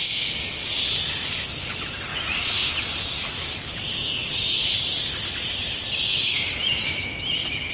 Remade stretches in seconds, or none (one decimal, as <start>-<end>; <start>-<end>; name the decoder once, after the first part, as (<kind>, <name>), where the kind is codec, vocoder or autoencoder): 2.1-2.7 (autoencoder, DAC-VAE); 3.9-4.6; 6.1-7.2